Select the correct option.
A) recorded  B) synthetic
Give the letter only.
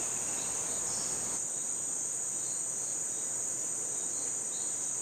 A